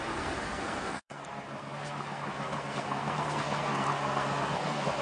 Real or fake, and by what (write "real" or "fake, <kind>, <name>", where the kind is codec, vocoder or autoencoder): fake, codec, SNAC